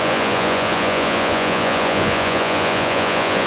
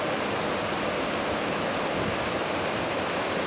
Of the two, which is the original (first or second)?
second